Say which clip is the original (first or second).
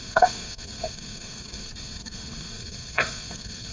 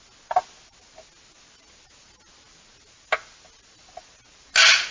second